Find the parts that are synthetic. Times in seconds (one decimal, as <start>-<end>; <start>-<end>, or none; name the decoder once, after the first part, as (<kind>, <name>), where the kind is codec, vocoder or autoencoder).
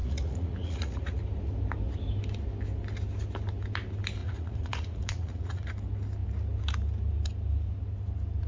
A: 0.0-1.2 (vocoder, Vocos); 4.2-5.7